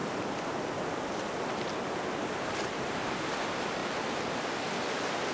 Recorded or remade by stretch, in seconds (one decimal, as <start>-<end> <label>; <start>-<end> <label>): 0.0-5.3 recorded